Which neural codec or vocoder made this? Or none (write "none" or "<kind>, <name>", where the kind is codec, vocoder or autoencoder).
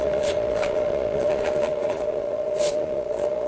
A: vocoder, Vocos